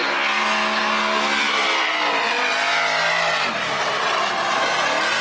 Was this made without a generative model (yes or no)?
yes